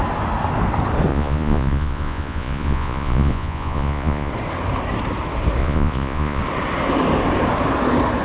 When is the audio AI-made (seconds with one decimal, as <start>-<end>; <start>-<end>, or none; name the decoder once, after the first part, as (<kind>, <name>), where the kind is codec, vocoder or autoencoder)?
1.1-4.3 (vocoder, Vocos); 5.6-6.4